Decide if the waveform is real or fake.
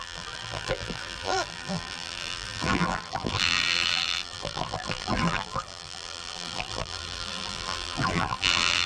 fake